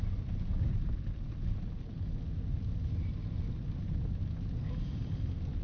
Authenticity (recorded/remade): recorded